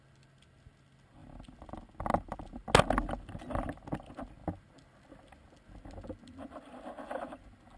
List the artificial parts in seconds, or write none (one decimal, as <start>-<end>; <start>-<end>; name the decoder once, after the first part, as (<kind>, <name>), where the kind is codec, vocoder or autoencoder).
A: none